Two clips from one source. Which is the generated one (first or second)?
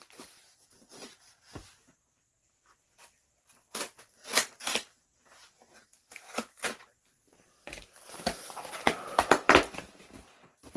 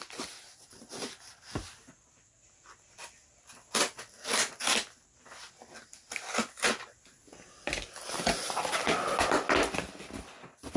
first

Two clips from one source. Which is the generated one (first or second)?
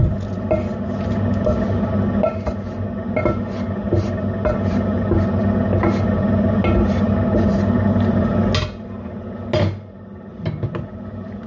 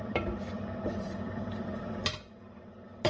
second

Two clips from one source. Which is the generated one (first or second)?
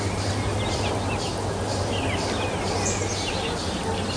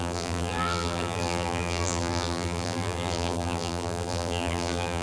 second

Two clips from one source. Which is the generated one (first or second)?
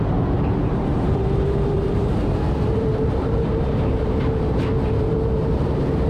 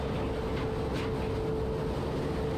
first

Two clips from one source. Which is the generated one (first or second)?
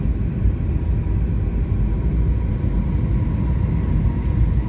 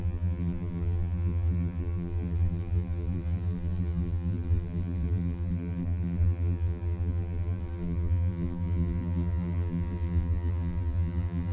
second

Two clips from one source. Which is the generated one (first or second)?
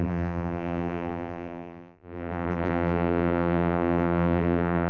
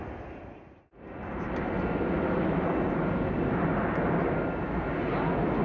first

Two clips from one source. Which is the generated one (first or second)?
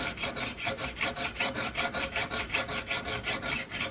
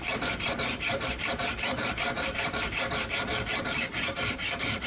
second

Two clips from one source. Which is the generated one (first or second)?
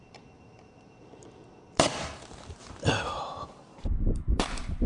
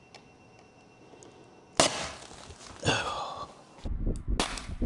first